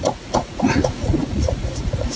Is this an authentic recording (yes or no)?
no